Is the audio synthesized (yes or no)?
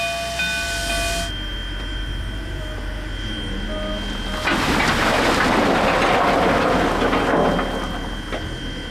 no